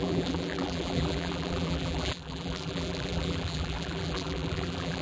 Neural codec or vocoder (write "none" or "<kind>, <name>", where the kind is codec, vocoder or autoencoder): vocoder, BigVGAN v2